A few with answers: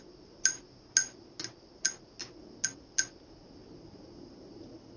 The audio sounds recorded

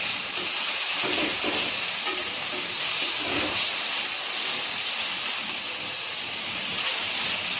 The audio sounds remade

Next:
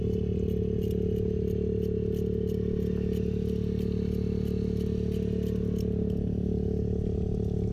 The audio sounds recorded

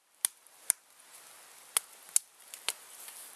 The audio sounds recorded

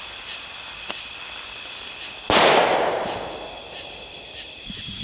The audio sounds recorded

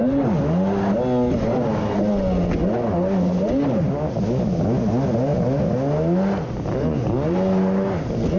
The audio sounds recorded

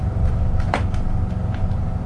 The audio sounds recorded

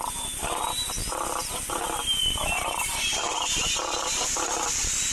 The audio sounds recorded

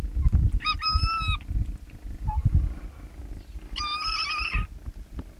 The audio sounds recorded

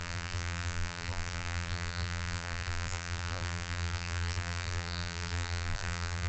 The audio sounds remade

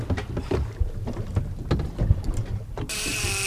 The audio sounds recorded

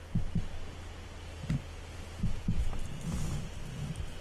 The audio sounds recorded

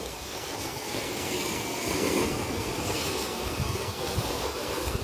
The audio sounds remade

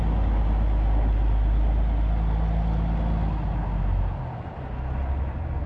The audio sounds recorded